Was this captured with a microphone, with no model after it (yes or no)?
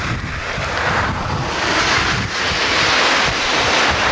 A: no